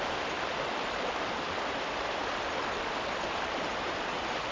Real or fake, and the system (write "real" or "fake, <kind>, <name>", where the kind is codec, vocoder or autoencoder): real